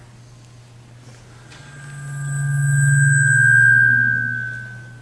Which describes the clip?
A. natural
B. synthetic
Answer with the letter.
A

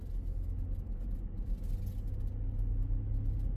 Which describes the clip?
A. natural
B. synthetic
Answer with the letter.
A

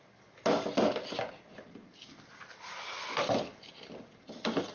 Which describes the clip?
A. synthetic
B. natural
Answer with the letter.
B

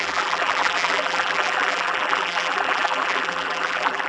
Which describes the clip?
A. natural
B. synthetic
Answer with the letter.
B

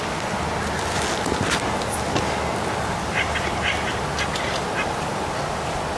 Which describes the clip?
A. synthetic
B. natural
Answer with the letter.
B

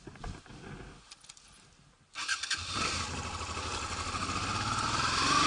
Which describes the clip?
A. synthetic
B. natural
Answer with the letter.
B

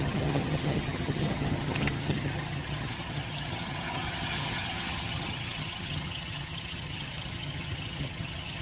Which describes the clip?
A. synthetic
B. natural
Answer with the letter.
A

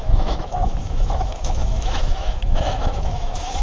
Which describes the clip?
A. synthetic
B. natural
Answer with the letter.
A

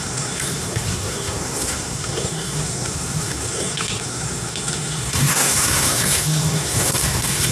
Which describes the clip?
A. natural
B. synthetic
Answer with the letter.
B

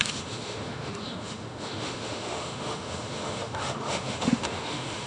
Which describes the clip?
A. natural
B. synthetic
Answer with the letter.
B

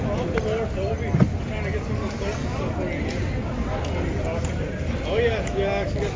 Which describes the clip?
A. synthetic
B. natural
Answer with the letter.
B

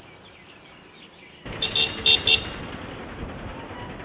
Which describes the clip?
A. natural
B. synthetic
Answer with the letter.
A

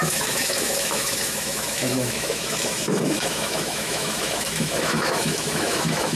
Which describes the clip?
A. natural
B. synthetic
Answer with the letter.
B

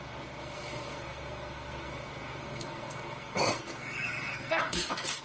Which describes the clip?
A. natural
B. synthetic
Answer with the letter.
B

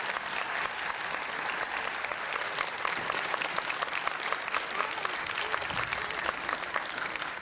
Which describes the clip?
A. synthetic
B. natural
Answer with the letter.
B